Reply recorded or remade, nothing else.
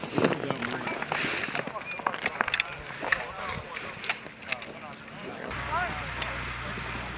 recorded